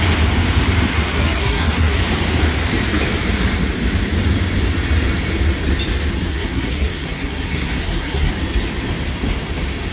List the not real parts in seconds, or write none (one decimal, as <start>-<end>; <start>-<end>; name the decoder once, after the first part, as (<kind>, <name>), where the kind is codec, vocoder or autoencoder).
0.9-2.0 (codec, SNAC); 6.3-8.3